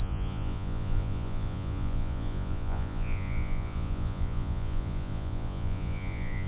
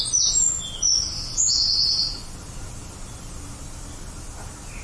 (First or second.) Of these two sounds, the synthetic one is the first